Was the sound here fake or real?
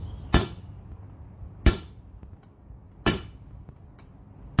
real